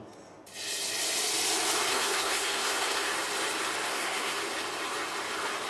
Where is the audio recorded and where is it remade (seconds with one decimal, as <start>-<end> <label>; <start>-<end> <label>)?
0.0-1.9 recorded; 1.9-3.1 remade; 3.1-3.9 recorded; 3.9-4.4 remade; 4.4-5.7 recorded